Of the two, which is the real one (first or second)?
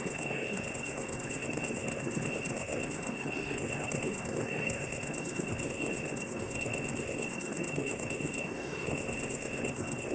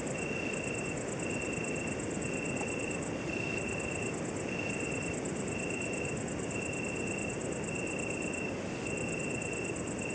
second